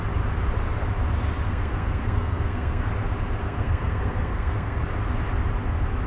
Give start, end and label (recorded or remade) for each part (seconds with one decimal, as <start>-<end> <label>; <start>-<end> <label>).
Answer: 0.0-1.5 recorded; 1.5-2.8 remade; 2.8-3.4 recorded; 3.4-4.8 remade; 4.8-6.1 recorded